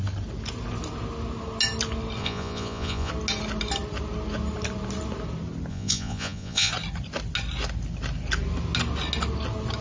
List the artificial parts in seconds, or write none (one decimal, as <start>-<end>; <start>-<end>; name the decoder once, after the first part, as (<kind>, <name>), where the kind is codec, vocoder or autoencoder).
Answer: 2.2-3.1 (vocoder, Vocos); 5.7-6.7